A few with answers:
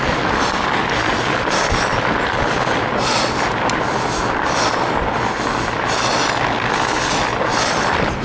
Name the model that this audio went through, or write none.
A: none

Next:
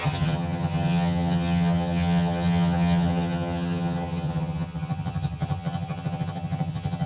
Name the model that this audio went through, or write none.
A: vocoder, HiFi-GAN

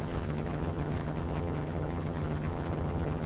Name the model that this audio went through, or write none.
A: vocoder, HiFi-GAN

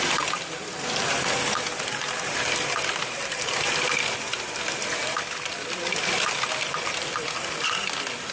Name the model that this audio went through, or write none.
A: none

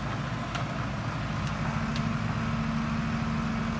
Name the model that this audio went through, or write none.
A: none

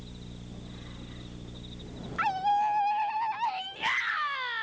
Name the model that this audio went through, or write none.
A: none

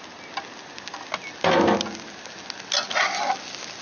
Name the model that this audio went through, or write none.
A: none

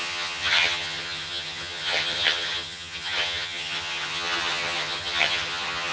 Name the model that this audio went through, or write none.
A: vocoder, HiFi-GAN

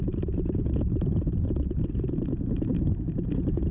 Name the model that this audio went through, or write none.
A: none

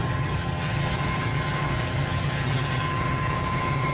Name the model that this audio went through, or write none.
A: vocoder, HiFi-GAN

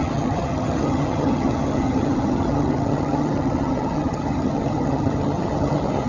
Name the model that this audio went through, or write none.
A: vocoder, HiFi-GAN